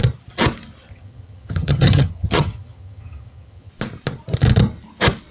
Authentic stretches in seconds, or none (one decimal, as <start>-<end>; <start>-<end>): 0.0-0.9; 3.7-5.3